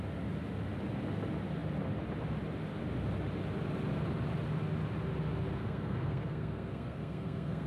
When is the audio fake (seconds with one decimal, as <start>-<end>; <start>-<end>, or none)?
5.6-7.7